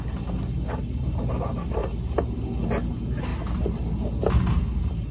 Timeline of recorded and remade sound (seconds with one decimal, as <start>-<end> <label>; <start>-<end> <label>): 0.0-5.1 recorded